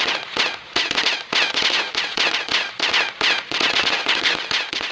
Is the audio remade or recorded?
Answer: remade